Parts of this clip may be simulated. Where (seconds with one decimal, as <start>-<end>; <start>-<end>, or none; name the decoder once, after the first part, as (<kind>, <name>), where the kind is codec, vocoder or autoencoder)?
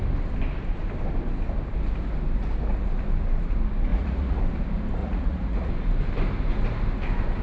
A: 3.9-4.4 (vocoder, Vocos); 5.0-5.7